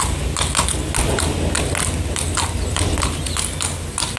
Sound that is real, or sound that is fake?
real